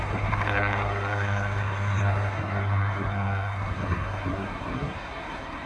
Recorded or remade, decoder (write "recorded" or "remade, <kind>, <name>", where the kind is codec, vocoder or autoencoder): remade, codec, SNAC